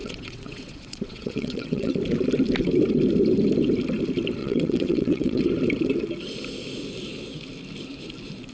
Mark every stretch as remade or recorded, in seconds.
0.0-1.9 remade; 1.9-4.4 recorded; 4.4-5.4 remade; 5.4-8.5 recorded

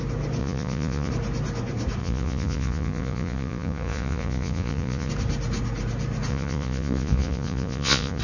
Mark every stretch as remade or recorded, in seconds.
0.0-0.4 recorded; 0.4-1.1 remade; 1.1-2.0 recorded; 2.0-5.1 remade; 5.1-6.3 recorded; 6.3-8.2 remade

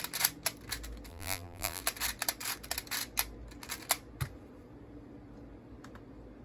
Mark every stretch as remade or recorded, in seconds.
0.0-1.1 recorded; 1.1-1.8 remade; 1.8-6.4 recorded